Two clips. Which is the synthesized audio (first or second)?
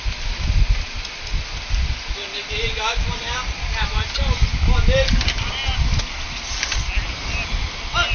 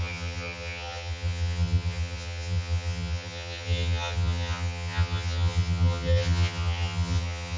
second